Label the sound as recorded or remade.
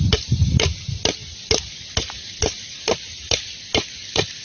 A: recorded